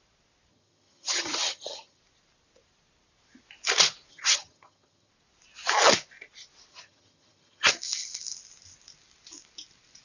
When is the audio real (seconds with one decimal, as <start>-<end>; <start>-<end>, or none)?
0.0-0.5; 2.0-4.1; 5.1-6.7; 7.7-10.0